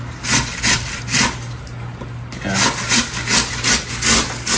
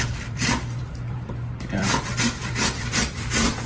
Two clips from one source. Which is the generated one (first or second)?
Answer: second